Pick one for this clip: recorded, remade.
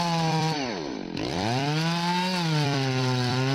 remade